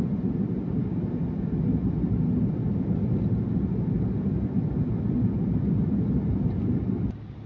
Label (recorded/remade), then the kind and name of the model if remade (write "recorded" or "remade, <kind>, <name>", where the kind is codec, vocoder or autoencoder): recorded